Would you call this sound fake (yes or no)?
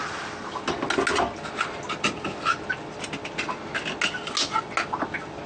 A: no